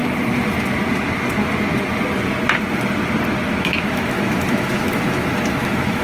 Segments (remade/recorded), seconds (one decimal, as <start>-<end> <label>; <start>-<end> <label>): 0.0-3.6 recorded; 3.6-6.0 remade